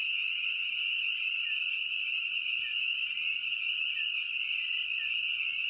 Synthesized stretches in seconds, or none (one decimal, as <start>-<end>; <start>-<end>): 0.0-1.2